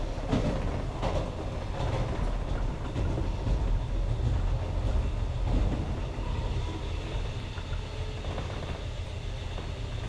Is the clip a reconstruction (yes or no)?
no